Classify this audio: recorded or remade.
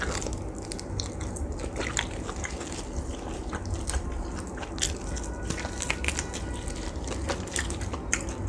recorded